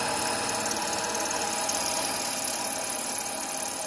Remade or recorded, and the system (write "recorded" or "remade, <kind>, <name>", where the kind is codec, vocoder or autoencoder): recorded